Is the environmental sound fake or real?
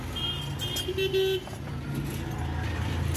real